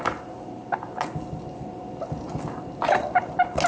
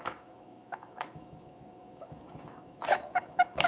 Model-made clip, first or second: second